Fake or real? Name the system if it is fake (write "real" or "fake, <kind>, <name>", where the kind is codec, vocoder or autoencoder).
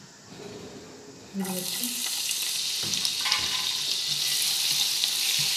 real